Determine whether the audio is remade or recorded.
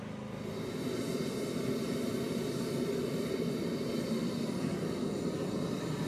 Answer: recorded